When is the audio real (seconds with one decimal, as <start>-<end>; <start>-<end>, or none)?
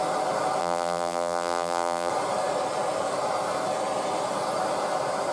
0.0-0.6; 2.1-5.3